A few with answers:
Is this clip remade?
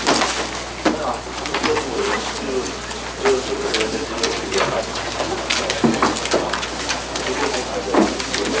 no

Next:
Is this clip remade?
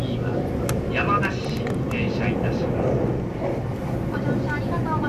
no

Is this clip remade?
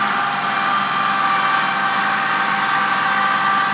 no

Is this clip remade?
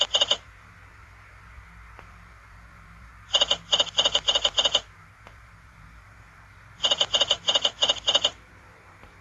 yes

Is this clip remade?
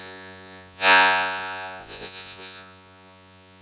yes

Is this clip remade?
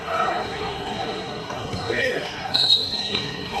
yes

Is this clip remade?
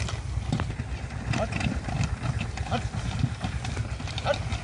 no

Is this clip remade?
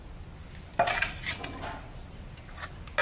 no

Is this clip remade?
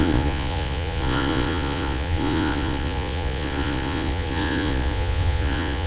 yes